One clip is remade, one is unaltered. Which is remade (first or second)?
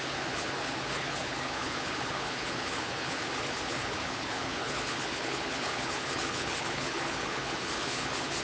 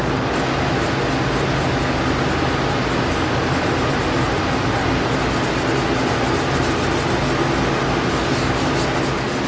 first